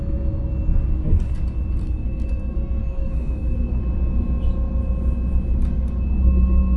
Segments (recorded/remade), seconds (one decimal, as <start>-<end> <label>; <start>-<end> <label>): 0.0-1.8 recorded; 1.8-3.8 remade; 3.8-6.8 recorded